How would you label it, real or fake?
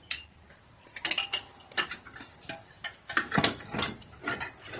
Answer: real